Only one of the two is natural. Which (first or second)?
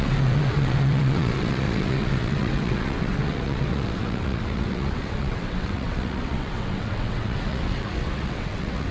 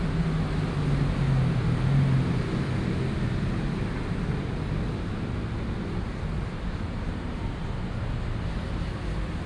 second